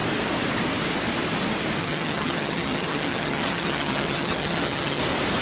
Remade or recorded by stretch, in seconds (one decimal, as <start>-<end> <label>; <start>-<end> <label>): 0.0-1.8 recorded; 1.8-5.0 remade; 5.0-5.4 recorded